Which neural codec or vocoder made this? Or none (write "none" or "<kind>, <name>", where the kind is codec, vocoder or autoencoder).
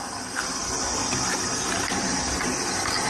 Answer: none